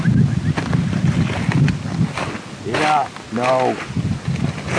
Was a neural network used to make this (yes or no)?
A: no